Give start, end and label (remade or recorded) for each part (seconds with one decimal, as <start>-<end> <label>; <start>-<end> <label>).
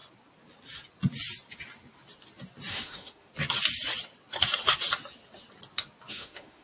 0.0-2.7 recorded; 2.7-3.3 remade; 3.3-6.1 recorded; 6.1-6.6 remade